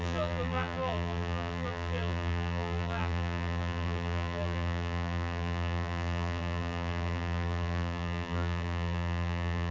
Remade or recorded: remade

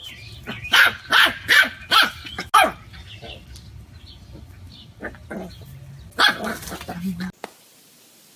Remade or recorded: recorded